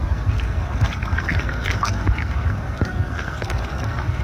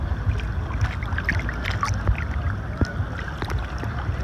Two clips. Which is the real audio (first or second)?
second